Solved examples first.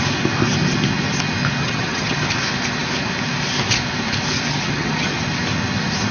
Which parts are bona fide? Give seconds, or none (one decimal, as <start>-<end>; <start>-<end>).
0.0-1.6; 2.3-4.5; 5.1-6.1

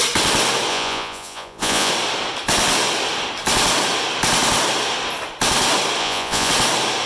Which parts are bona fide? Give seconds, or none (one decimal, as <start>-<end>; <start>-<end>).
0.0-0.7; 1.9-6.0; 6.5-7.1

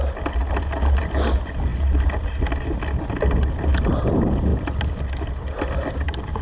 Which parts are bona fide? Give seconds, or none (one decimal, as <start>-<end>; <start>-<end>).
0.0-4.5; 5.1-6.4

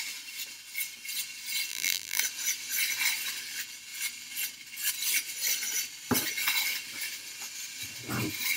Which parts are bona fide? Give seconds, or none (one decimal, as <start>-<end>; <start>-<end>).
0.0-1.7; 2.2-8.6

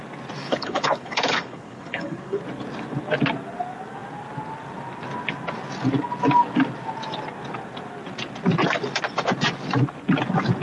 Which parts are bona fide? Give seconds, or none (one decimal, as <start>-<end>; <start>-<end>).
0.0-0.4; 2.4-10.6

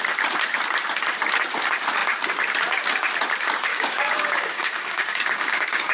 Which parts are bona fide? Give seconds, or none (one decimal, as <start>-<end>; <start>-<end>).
0.0-3.7